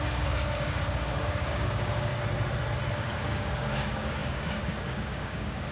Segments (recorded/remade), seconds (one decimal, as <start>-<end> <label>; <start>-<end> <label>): 0.0-2.1 remade; 2.1-2.9 recorded; 2.9-5.7 remade